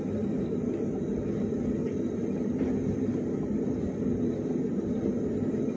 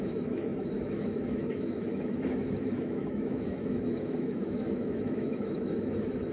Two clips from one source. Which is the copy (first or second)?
second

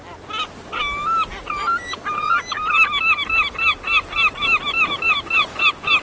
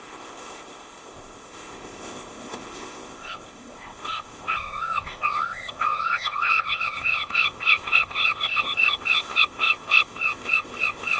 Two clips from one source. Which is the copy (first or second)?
second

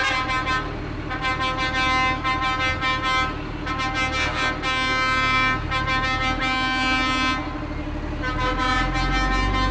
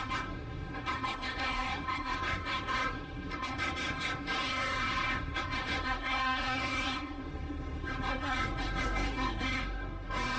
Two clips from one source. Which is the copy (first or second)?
second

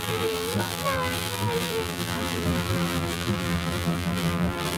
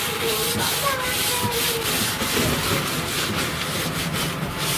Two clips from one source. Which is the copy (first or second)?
first